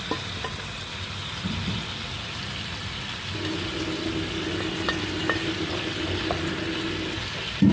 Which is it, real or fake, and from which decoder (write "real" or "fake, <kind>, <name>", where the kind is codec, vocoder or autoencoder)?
real